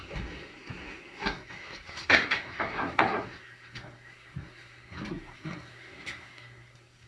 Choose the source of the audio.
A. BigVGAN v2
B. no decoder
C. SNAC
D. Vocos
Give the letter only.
C